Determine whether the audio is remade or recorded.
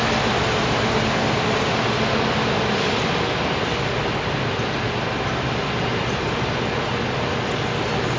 recorded